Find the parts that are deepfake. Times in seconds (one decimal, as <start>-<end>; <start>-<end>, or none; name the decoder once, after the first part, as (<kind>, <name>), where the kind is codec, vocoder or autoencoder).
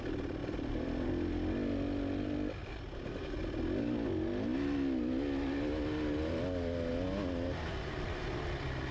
0.4-1.1 (vocoder, BigVGAN v2); 2.6-3.4